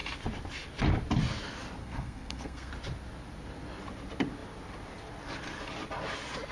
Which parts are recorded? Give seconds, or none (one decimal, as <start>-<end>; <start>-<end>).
0.0-1.8; 2.7-6.5